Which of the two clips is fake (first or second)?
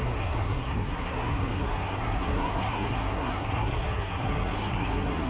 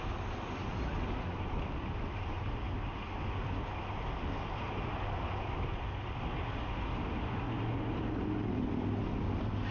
first